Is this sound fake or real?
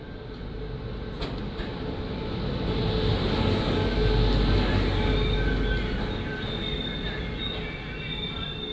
real